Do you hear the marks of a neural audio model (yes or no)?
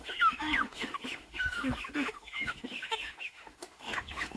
yes